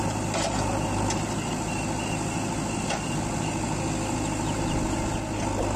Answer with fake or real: real